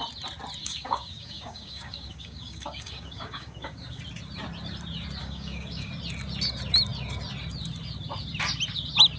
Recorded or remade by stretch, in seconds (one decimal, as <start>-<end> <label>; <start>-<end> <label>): 0.0-0.6 recorded; 0.6-4.0 remade; 4.0-5.2 recorded; 5.2-5.9 remade; 5.9-9.2 recorded